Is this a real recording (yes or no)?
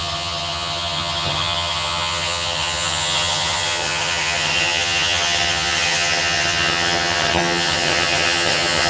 no